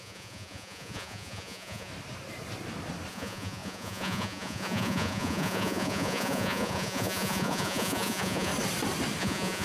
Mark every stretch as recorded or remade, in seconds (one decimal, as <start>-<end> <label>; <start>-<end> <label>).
0.0-1.9 remade; 1.9-3.1 recorded; 3.1-8.5 remade; 8.5-9.2 recorded; 9.2-9.6 remade